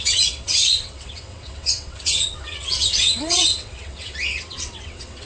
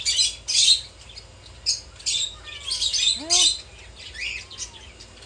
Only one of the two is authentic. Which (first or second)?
second